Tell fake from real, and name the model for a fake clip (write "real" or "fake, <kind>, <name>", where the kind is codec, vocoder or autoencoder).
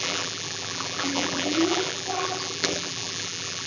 fake, vocoder, BigVGAN v2